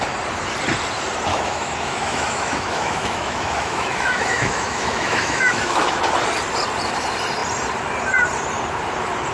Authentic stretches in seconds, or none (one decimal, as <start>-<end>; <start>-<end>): 0.0-1.3; 6.0-9.3

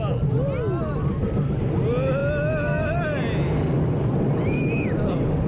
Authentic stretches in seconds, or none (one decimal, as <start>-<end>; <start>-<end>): 0.0-5.5

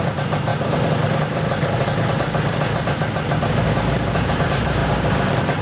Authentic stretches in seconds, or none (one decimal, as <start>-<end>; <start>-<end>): 0.5-3.9

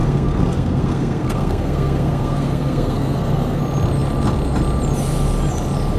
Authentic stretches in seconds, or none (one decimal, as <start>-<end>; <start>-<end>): 3.6-6.0

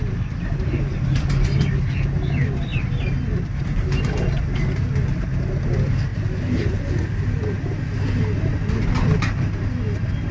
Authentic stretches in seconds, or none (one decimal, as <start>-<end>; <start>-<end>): 0.0-10.3

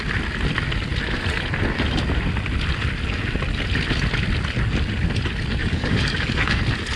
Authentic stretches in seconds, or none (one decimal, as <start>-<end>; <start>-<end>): 0.0-5.6; 6.6-7.0